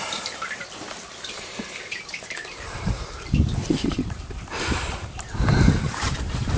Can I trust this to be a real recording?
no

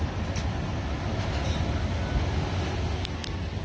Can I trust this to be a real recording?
yes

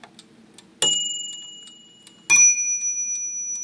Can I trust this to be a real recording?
yes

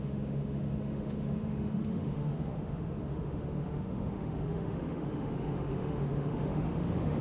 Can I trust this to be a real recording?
no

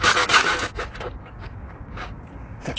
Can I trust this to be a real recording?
no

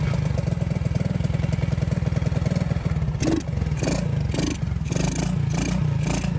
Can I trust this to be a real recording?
yes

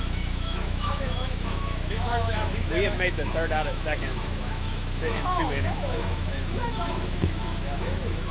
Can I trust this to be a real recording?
no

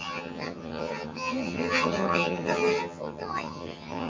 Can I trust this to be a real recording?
no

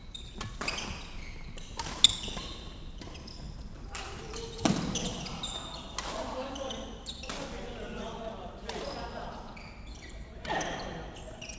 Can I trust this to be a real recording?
yes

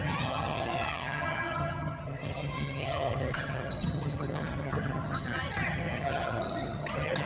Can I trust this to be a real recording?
no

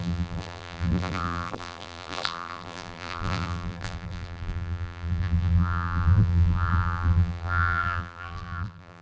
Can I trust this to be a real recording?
no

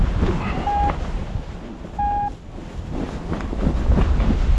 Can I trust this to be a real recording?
yes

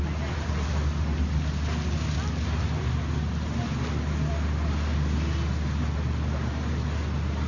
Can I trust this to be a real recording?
yes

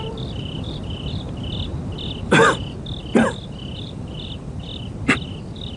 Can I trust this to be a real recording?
no